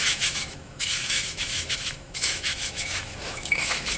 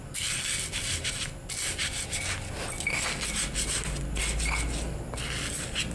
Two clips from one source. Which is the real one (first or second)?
second